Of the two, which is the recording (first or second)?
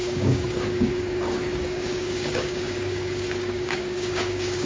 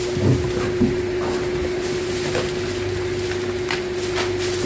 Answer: second